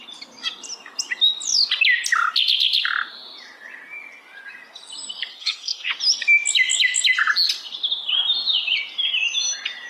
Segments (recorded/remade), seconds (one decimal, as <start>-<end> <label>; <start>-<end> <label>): 0.0-5.3 recorded; 5.3-5.9 remade; 5.9-9.9 recorded